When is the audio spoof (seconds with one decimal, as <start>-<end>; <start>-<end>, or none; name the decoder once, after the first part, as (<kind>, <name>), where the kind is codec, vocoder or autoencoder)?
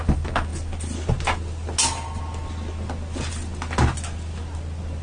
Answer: none